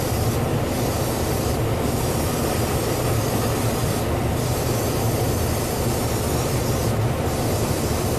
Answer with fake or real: real